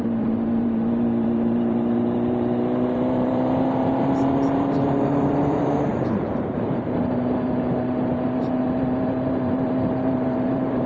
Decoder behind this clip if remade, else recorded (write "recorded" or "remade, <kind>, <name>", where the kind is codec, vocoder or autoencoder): remade, vocoder, BigVGAN v2